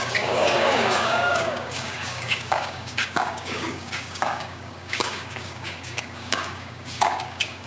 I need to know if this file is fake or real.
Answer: fake